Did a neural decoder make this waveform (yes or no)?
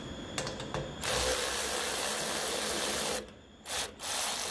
no